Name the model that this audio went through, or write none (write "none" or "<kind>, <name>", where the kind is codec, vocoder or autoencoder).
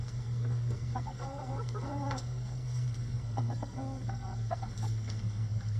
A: codec, SNAC